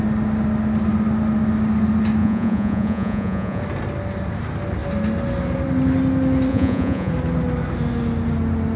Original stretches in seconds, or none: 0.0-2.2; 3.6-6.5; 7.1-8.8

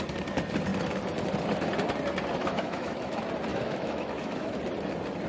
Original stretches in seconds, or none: 0.0-2.4; 3.1-3.5; 4.6-5.3

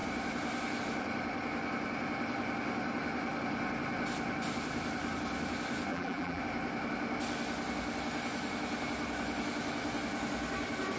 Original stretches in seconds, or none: 0.0-5.9; 6.4-11.0

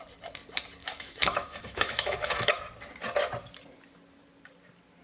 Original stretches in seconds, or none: 0.0-0.8; 2.6-5.0

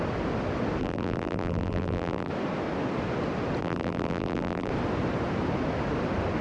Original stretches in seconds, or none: 0.0-0.8; 2.3-3.6; 4.7-6.4

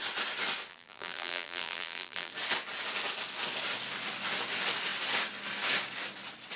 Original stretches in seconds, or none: 0.0-0.7; 2.3-6.6